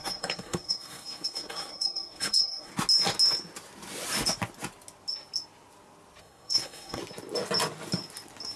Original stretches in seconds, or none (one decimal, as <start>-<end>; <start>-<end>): 2.7-6.2; 7.0-8.6